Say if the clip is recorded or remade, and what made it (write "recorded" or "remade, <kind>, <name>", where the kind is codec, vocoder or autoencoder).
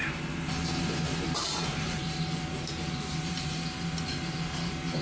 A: remade, vocoder, BigVGAN v2